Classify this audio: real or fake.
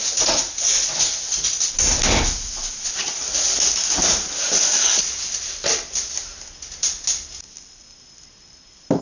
real